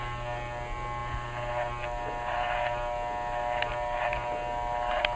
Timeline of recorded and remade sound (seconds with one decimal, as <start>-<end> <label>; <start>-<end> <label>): 0.0-5.2 recorded